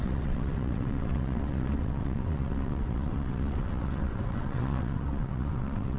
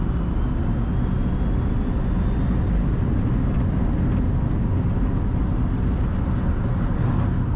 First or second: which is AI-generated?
first